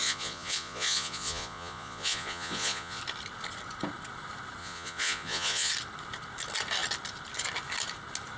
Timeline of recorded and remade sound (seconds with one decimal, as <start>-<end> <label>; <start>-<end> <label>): 0.0-3.0 remade; 3.0-4.6 recorded; 4.6-5.7 remade; 5.7-8.4 recorded